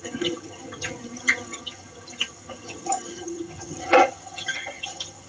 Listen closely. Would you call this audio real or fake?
fake